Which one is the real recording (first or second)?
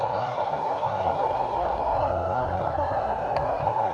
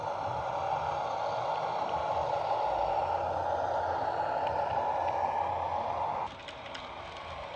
second